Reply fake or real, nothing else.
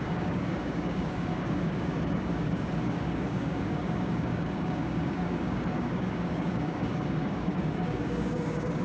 fake